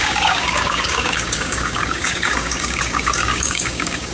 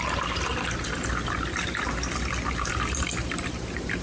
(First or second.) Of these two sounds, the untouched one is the second